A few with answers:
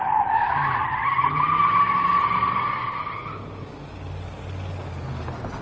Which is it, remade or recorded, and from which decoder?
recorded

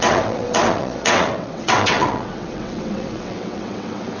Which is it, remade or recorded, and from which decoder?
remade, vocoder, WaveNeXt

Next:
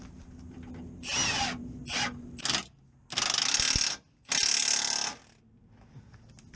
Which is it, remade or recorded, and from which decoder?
recorded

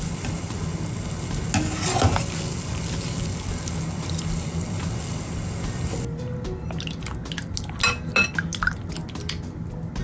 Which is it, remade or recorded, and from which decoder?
recorded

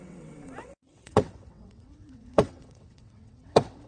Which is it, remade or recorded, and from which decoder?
remade, vocoder, WaveNeXt